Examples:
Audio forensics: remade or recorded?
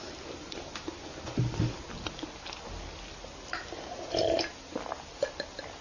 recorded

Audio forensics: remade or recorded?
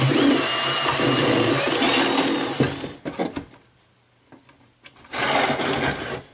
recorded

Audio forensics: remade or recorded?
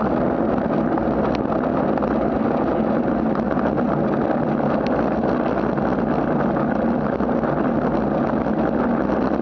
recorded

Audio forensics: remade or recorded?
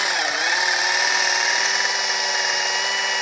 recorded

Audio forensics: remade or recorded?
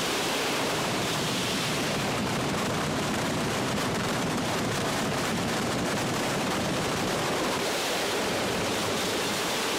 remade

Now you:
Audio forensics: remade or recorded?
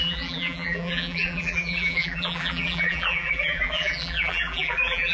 remade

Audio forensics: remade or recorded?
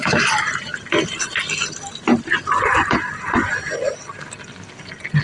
recorded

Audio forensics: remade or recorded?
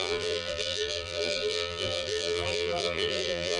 remade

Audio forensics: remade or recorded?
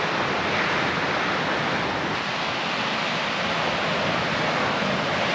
recorded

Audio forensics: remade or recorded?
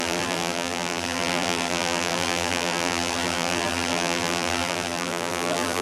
remade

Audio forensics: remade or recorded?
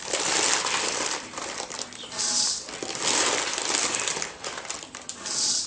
remade